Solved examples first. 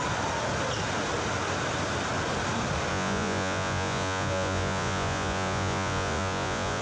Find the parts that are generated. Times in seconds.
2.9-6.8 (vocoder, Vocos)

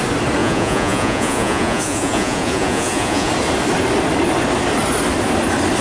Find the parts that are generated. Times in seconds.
0.4-3.3 (vocoder, Vocos)

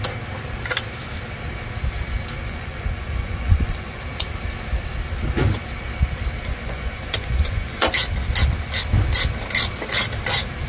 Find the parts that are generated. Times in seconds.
2.4-4.0 (vocoder, Vocos); 6.5-7.9

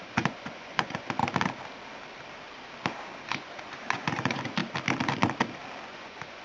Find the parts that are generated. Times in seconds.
0.0-1.2 (vocoder, Vocos); 3.3-4.6; 5.9-6.4

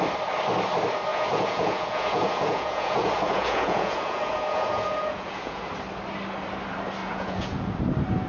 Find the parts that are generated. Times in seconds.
1.1-5.7 (vocoder, Vocos); 7.0-7.7

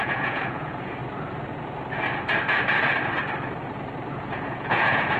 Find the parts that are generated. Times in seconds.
0.0-1.0 (vocoder, Vocos); 4.1-5.2